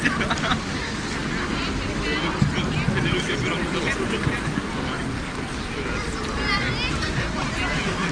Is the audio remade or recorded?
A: recorded